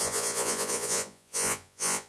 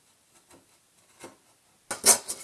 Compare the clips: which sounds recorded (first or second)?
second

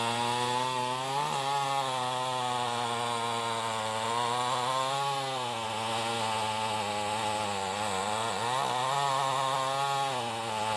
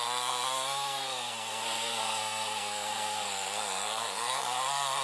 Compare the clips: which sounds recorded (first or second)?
first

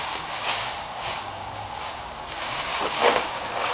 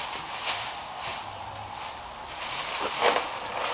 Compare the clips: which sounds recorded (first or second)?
second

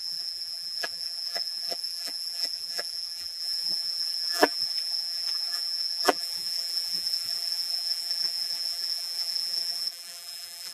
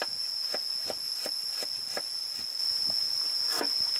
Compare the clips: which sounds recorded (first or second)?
second